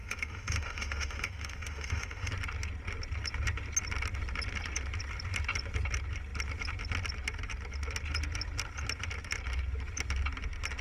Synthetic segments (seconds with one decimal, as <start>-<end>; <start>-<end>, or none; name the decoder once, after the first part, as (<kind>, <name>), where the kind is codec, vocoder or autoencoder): 0.0-2.3 (autoencoder, DAC-VAE)